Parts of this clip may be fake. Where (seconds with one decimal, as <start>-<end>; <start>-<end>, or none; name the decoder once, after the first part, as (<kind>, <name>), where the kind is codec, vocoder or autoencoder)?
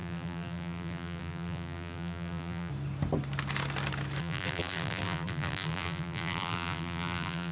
0.0-2.7 (vocoder, BigVGAN v2); 4.2-7.5